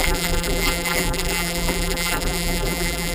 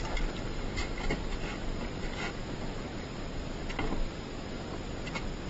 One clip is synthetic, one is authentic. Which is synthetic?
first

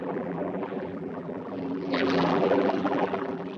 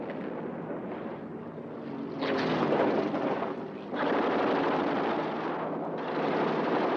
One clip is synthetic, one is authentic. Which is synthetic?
first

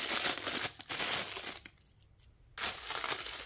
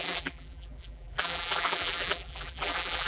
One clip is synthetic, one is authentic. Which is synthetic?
second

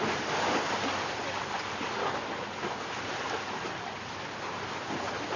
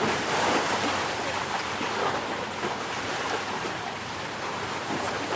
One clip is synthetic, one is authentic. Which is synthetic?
second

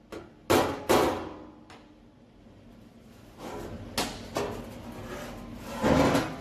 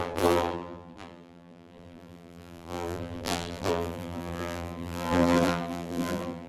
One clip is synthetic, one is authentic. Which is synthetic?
second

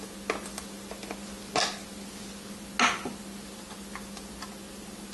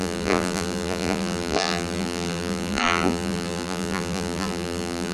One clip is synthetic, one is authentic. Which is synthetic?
second